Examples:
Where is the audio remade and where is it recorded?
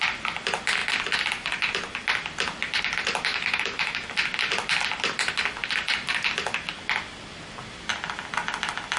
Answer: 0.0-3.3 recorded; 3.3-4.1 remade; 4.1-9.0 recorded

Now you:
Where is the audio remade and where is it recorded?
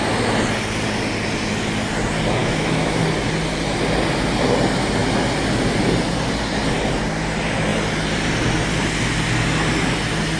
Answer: 0.0-2.4 recorded; 2.4-3.0 remade; 3.0-10.4 recorded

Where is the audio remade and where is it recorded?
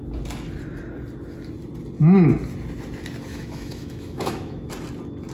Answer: 0.0-3.3 recorded; 3.3-4.7 remade; 4.7-5.3 recorded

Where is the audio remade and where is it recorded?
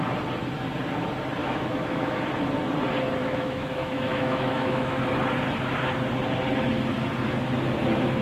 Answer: 0.0-1.4 recorded; 1.4-2.2 remade; 2.2-3.2 recorded; 3.2-5.0 remade; 5.0-8.2 recorded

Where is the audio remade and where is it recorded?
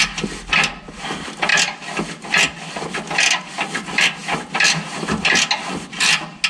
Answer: 0.0-6.5 recorded